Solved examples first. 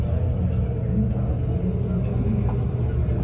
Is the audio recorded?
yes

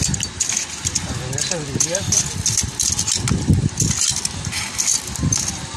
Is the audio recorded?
yes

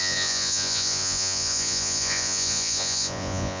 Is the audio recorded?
no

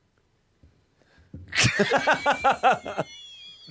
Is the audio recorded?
yes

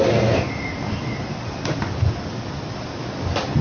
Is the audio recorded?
yes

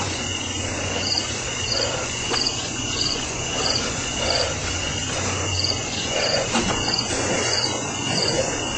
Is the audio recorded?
no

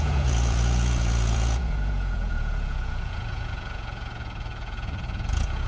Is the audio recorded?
no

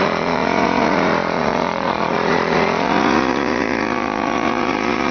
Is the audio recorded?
no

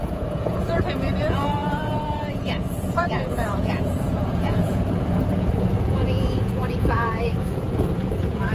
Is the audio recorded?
no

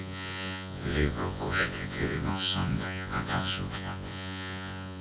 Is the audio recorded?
no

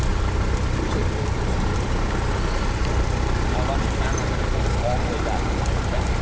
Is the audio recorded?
yes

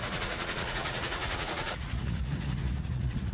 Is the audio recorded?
no